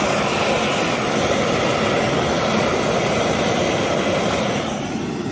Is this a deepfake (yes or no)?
no